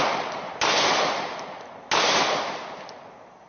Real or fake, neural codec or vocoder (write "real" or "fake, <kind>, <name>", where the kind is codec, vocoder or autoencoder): real